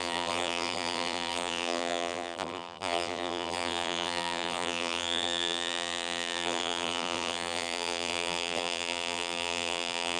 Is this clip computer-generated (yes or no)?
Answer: yes